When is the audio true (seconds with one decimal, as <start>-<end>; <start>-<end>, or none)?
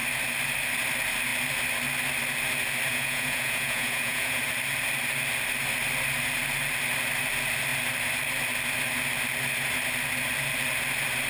0.0-2.9; 4.4-11.3